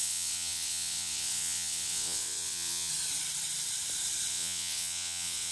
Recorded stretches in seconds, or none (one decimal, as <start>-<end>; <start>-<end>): 2.9-4.3